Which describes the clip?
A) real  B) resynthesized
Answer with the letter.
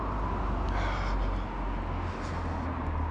A